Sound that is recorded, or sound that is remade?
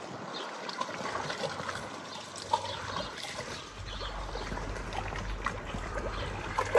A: recorded